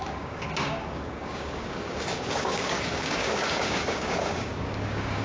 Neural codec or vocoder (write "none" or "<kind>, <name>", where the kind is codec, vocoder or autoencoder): codec, DAC